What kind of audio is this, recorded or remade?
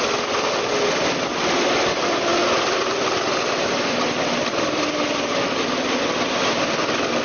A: recorded